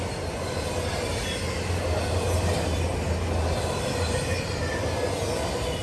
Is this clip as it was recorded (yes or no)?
yes